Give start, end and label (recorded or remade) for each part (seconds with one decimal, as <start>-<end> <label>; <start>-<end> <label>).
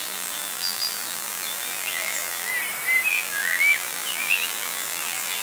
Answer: 0.0-2.5 remade; 2.5-3.1 recorded; 3.1-5.4 remade